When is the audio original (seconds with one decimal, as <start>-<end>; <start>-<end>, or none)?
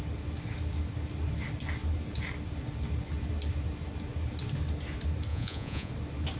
0.0-5.3; 5.9-6.4